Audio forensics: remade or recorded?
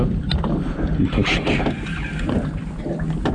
recorded